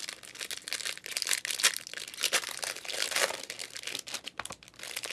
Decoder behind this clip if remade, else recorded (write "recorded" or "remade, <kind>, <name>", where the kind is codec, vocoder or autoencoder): recorded